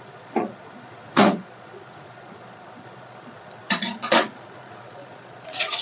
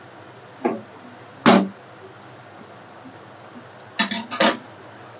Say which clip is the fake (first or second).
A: first